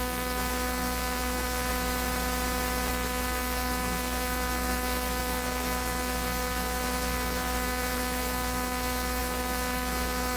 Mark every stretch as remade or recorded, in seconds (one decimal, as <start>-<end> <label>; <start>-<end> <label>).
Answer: 0.0-1.7 remade; 1.7-2.9 recorded; 2.9-10.4 remade